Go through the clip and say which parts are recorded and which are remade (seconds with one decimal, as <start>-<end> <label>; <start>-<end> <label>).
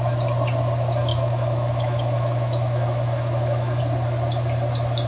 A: 0.0-1.1 recorded; 1.1-3.8 remade; 3.8-5.1 recorded